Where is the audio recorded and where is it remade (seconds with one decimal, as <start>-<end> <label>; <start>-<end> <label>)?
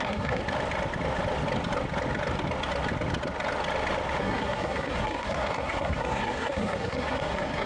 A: 0.0-0.4 remade; 0.4-4.2 recorded; 4.2-7.7 remade